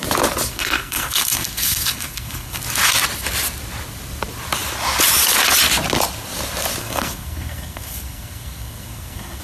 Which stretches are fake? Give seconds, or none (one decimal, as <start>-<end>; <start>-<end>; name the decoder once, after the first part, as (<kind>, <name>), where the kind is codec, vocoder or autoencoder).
0.5-2.6 (codec, SNAC); 6.8-9.4